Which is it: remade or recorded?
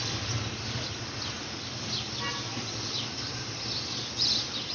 recorded